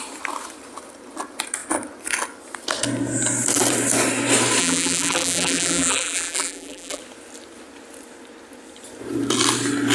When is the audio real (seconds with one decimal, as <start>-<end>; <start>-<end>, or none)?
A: 0.0-4.6; 7.0-9.9